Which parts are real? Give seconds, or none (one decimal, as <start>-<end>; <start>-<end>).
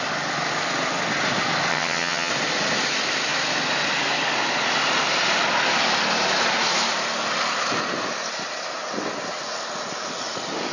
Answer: 0.0-1.7; 2.3-10.7